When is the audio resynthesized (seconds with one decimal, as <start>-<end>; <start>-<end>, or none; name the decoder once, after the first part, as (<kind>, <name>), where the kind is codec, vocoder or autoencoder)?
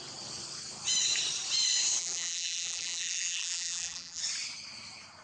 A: 2.0-4.2 (vocoder, BigVGAN v2)